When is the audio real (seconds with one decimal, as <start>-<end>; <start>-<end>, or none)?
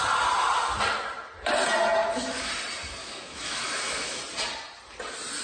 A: 0.0-2.0; 2.5-3.0; 4.2-5.4